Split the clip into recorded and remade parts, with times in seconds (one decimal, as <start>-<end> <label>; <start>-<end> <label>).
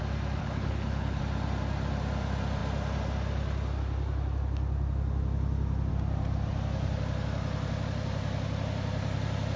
0.0-0.4 recorded; 0.4-1.2 remade; 1.2-9.6 recorded